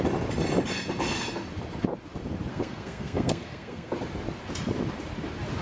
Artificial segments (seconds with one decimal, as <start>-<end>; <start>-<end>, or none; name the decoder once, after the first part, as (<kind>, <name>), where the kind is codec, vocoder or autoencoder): 2.5-3.9 (codec, SNAC)